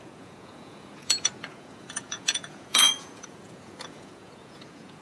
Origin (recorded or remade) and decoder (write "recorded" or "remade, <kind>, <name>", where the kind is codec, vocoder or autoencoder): remade, vocoder, Vocos